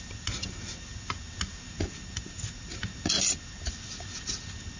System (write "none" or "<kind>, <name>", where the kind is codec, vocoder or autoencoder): none